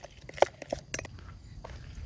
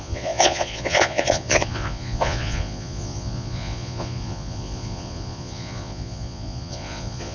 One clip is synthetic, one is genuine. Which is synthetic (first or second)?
second